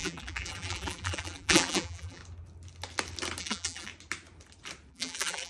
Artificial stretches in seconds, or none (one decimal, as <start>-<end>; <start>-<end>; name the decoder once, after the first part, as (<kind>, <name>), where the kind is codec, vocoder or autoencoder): 0.0-2.2 (vocoder, BigVGAN v2); 3.4-3.9; 4.9-5.5